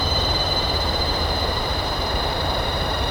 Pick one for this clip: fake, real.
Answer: fake